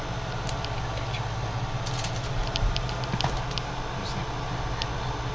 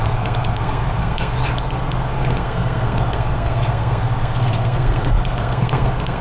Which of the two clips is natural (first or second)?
first